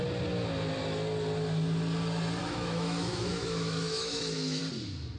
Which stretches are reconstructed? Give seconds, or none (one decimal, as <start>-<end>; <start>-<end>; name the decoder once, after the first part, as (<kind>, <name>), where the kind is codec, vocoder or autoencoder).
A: 2.4-4.6 (autoencoder, DAC-VAE)

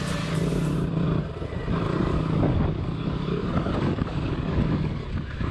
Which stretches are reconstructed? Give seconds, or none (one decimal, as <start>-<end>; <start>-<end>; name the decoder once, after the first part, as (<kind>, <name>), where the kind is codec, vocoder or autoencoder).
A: 1.9-5.5 (codec, DAC)

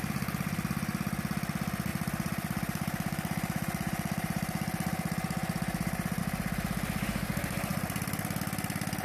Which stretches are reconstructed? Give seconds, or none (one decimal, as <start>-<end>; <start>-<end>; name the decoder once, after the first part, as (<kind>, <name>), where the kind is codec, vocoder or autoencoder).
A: 1.9-6.2 (vocoder, BigVGAN v2)